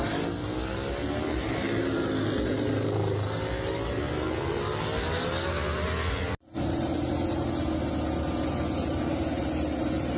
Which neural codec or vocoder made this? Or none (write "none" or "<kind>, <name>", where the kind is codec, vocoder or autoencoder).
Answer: none